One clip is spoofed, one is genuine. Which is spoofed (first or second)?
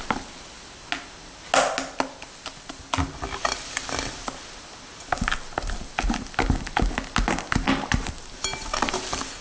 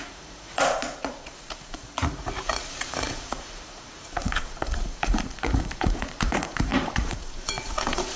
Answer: second